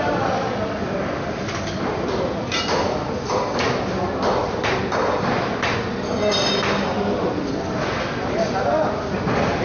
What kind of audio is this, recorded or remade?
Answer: recorded